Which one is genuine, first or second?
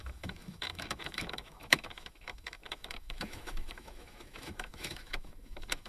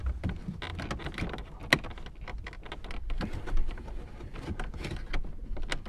second